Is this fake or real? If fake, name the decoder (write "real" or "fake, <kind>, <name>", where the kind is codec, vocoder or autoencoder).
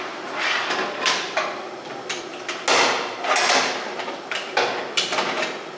real